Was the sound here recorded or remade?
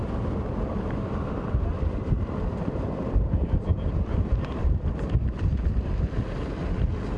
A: remade